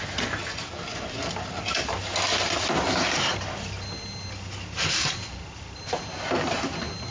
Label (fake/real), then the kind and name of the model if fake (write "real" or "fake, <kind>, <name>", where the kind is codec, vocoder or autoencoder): real